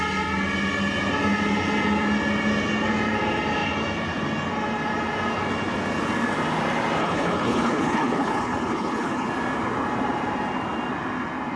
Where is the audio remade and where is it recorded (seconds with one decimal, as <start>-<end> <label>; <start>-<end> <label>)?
0.0-7.0 recorded; 7.0-9.3 remade; 9.3-11.6 recorded